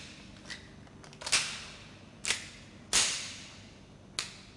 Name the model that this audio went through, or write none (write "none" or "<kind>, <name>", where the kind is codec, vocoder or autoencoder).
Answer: none